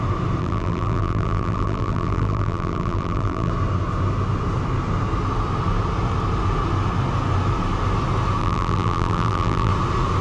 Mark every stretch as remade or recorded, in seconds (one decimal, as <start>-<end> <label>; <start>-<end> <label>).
0.0-0.4 recorded; 0.4-3.5 remade; 3.5-8.4 recorded; 8.4-9.7 remade; 9.7-10.2 recorded